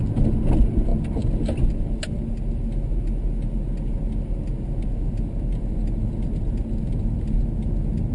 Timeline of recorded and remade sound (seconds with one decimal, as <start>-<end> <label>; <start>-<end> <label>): 0.0-8.1 recorded